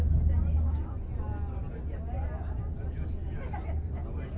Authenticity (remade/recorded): recorded